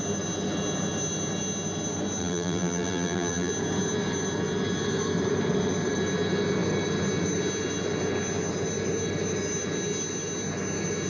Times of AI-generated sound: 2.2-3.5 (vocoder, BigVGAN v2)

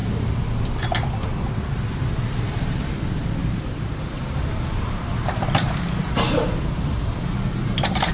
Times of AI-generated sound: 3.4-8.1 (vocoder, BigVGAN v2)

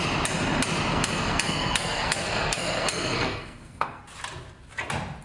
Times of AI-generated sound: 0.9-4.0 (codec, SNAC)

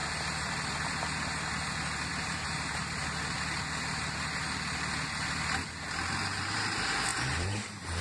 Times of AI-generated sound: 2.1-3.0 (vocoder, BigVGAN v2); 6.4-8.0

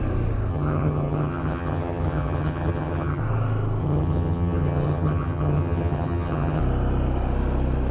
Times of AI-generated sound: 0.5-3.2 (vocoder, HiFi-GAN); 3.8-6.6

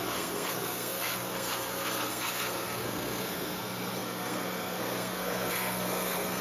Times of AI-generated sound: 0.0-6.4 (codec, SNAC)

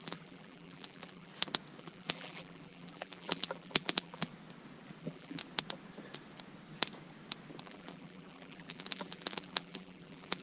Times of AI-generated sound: 0.0-1.3 (vocoder, BigVGAN v2); 1.8-4.3; 5.0-5.4; 7.6-10.4